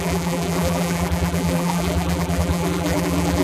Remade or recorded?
remade